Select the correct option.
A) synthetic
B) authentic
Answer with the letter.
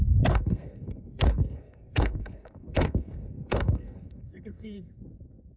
A